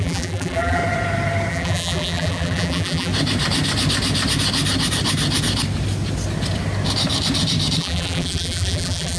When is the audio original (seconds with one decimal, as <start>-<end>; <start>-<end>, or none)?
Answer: 0.8-1.5; 3.1-7.8